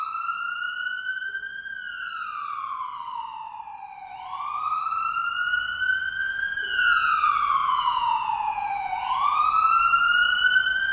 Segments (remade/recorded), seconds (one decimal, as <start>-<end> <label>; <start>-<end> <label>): 0.0-6.2 recorded; 6.2-7.1 remade; 7.1-7.6 recorded; 7.6-9.4 remade; 9.4-10.9 recorded